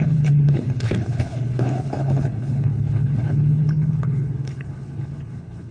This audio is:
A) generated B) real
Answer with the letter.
A